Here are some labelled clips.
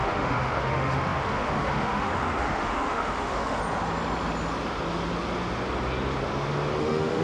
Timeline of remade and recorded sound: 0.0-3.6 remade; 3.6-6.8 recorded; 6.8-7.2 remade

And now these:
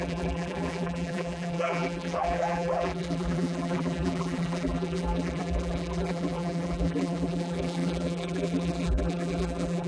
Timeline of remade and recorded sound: 0.0-9.9 remade

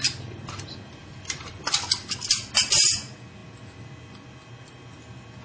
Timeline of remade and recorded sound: 0.0-1.0 recorded; 1.0-2.3 remade; 2.3-5.4 recorded

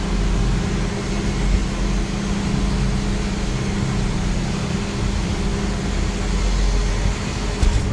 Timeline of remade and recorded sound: 0.0-7.9 recorded

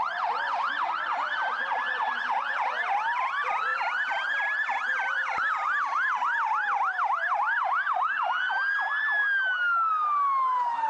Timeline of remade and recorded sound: 0.0-10.9 recorded

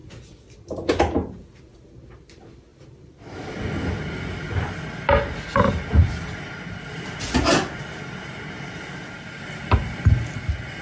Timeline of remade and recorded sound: 0.0-10.8 recorded

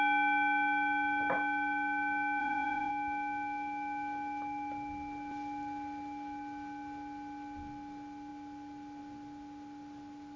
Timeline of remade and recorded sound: 0.0-2.4 recorded; 2.4-2.9 remade; 2.9-10.4 recorded

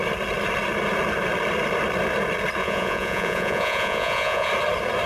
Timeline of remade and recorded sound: 0.0-2.6 recorded; 2.6-4.5 remade; 4.5-5.1 recorded